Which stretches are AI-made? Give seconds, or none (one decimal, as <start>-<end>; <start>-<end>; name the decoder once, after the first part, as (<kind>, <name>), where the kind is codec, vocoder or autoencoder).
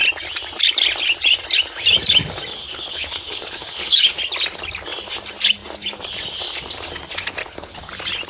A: 2.6-4.2 (codec, HILCodec); 7.4-7.9